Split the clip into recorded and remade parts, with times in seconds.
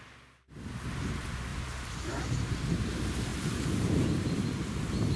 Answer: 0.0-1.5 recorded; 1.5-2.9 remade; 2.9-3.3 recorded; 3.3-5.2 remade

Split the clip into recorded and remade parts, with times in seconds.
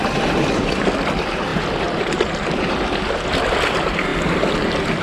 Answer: 0.0-0.6 remade; 0.6-1.5 recorded; 1.5-2.5 remade; 2.5-5.0 recorded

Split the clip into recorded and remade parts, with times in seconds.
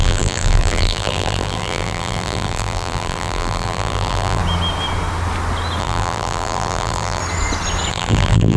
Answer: 0.0-4.4 remade; 4.4-5.8 recorded; 5.8-7.2 remade; 7.2-7.9 recorded; 7.9-8.6 remade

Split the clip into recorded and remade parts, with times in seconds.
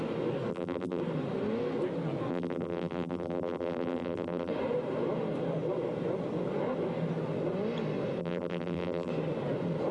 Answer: 0.0-0.5 recorded; 0.5-1.0 remade; 1.0-2.3 recorded; 2.3-4.5 remade; 4.5-8.2 recorded; 8.2-9.1 remade; 9.1-9.9 recorded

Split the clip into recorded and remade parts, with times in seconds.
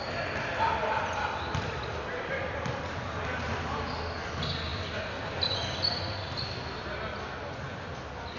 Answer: 0.0-8.4 recorded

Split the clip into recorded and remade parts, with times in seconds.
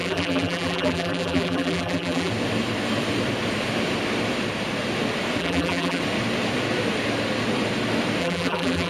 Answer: 0.0-2.3 remade; 2.3-5.4 recorded; 5.4-6.0 remade; 6.0-8.2 recorded; 8.2-8.9 remade